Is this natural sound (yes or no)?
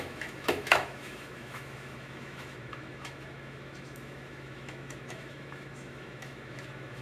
no